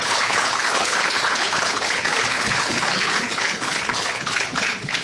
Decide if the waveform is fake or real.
fake